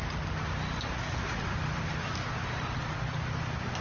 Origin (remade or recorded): recorded